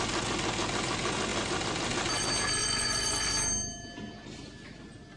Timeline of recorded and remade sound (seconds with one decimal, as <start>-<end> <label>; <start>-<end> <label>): 0.0-2.6 recorded; 2.6-3.3 remade; 3.3-5.2 recorded